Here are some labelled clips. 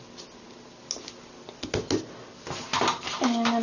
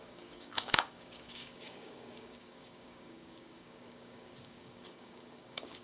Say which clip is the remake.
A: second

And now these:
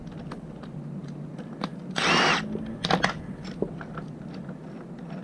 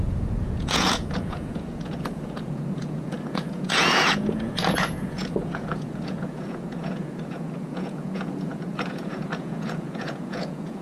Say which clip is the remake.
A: second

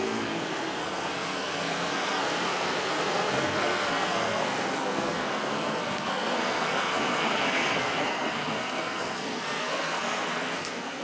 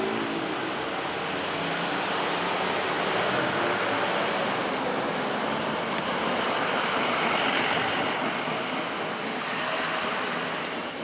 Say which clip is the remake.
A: first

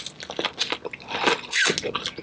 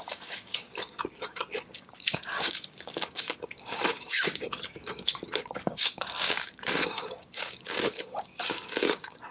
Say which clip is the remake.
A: second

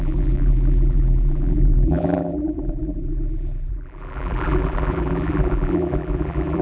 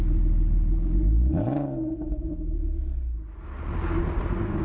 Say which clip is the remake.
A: first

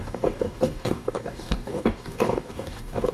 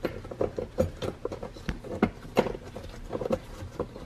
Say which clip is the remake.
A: first